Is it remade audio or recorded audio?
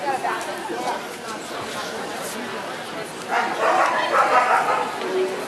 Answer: recorded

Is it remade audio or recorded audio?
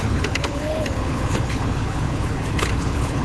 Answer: remade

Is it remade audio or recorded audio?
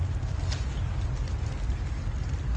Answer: recorded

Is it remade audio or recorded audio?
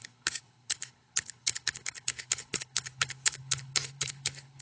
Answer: remade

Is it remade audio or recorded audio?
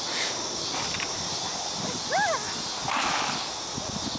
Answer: recorded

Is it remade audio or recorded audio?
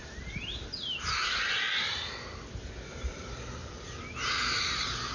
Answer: recorded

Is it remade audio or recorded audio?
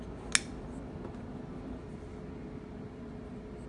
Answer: recorded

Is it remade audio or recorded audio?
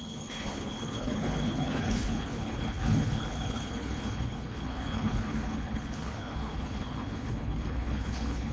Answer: remade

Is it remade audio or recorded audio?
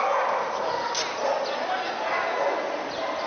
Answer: recorded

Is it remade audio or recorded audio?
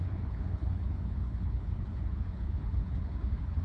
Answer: remade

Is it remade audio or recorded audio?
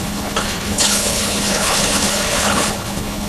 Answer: remade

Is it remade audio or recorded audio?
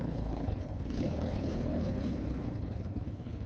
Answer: remade